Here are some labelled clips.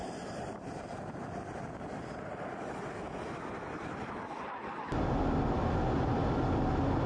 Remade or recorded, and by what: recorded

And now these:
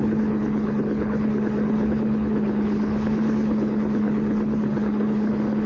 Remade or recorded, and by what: remade, codec, HILCodec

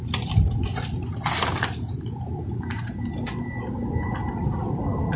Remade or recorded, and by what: recorded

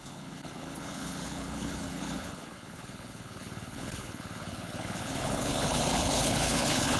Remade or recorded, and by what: remade, codec, HILCodec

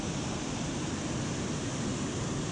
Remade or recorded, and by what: recorded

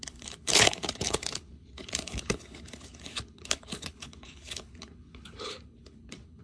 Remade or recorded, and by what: remade, codec, HILCodec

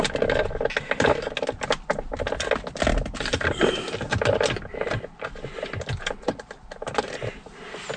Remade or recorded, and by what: recorded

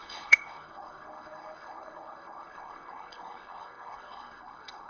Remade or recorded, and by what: remade, codec, HILCodec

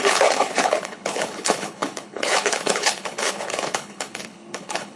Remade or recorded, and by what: remade, codec, HILCodec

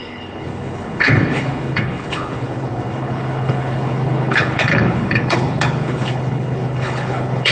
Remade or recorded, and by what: remade, codec, HILCodec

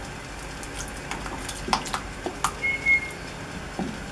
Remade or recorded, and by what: recorded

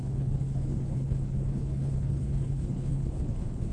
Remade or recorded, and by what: remade, codec, HILCodec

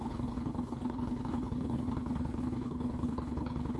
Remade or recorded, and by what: remade, codec, HILCodec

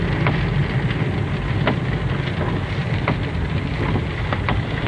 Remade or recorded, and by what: recorded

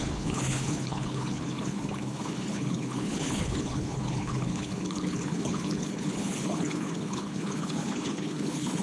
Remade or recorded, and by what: remade, codec, HILCodec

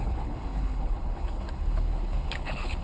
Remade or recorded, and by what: remade, codec, HILCodec